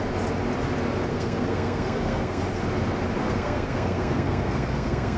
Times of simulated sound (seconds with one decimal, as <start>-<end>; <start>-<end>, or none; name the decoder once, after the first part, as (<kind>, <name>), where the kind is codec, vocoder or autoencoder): 1.1-2.4 (codec, SNAC); 3.2-5.2